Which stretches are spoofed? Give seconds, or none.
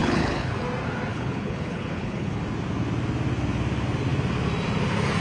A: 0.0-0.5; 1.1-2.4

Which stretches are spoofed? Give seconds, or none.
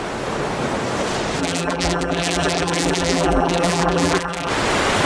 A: 1.4-4.5